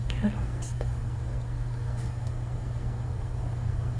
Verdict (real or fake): fake